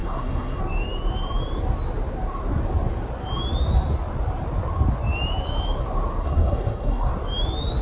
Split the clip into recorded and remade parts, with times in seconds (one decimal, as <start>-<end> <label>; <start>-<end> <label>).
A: 0.0-0.6 remade; 0.6-6.2 recorded; 6.2-7.1 remade; 7.1-7.8 recorded